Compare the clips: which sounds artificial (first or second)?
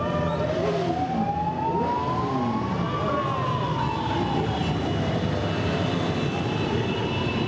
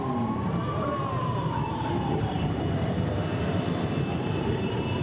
second